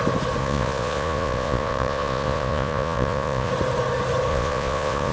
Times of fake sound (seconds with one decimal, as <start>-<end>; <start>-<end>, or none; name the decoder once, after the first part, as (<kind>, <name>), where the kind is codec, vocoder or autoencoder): 0.4-3.5 (vocoder, Vocos); 4.3-5.1